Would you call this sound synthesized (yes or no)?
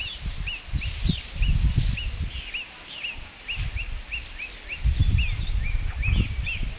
no